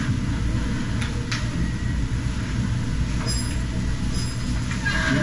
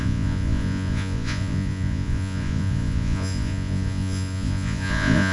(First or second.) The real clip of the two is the first